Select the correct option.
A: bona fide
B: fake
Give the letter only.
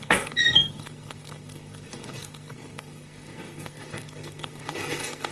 B